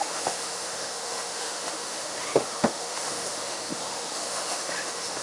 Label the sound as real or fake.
fake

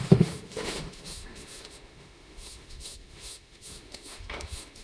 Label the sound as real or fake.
fake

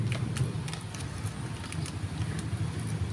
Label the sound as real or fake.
real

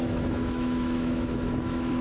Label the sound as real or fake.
fake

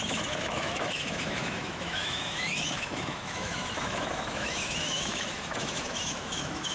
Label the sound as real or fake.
fake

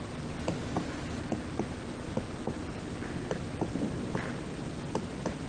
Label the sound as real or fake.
real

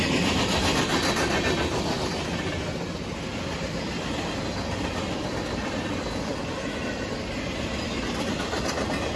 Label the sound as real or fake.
real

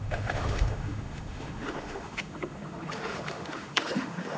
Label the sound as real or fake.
fake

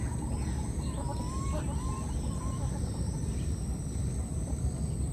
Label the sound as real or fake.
real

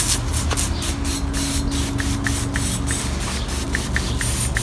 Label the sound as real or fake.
real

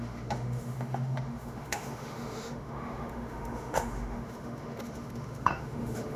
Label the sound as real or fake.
fake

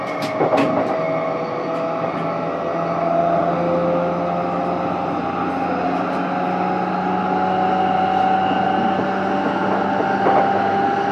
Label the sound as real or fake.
real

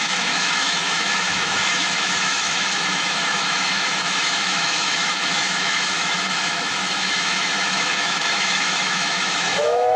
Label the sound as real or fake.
fake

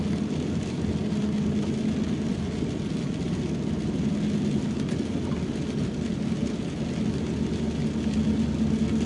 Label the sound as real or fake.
real